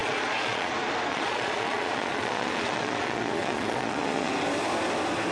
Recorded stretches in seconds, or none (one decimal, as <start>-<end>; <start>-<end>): 0.7-1.1; 4.3-5.3